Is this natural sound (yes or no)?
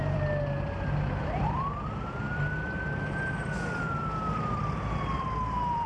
no